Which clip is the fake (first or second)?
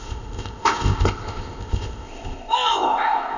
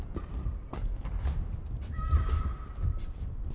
first